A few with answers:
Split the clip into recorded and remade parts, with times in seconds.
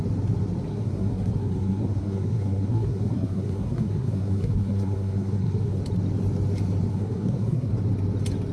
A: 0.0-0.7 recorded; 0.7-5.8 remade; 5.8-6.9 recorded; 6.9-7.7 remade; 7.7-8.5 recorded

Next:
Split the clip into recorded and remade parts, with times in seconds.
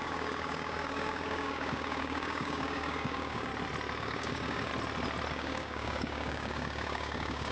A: 0.0-3.5 remade; 3.5-4.0 recorded; 4.0-4.7 remade; 4.7-5.3 recorded; 5.3-7.5 remade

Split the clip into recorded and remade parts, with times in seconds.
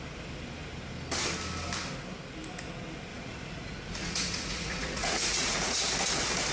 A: 0.0-3.1 recorded; 3.1-5.8 remade; 5.8-6.5 recorded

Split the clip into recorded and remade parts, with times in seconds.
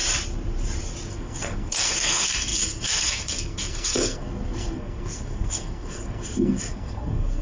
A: 0.0-1.1 recorded; 1.1-7.4 remade